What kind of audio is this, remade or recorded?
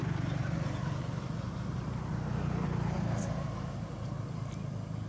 recorded